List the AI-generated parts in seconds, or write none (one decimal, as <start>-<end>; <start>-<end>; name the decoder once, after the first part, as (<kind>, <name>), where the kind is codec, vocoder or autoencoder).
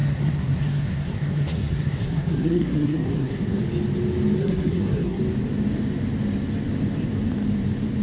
0.0-3.6 (codec, SNAC); 4.4-5.2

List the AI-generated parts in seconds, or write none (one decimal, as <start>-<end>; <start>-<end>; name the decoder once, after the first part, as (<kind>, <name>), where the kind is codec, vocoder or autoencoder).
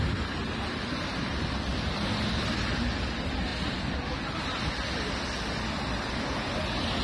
none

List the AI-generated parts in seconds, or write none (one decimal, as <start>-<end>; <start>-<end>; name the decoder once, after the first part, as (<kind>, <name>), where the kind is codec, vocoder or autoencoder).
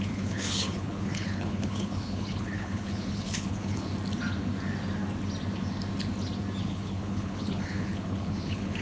0.0-3.9 (codec, HILCodec); 6.6-8.8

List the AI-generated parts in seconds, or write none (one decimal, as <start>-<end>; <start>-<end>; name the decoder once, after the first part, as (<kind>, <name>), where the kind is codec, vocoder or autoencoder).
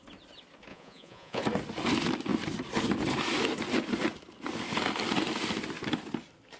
0.7-1.4 (vocoder, Vocos)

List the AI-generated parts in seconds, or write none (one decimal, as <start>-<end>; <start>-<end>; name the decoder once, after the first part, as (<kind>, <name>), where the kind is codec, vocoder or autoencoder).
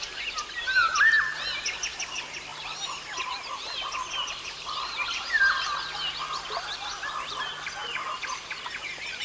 none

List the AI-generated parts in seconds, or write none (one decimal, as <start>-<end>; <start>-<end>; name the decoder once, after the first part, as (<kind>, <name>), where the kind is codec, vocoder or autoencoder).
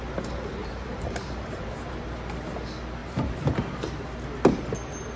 0.6-1.7 (vocoder, BigVGAN v2); 3.0-3.7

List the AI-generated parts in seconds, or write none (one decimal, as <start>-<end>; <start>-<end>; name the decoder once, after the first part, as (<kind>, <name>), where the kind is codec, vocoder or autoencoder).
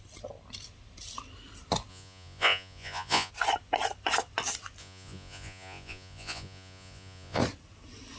1.9-3.3 (vocoder, Vocos); 4.8-7.4